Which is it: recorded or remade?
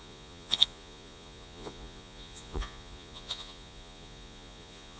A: remade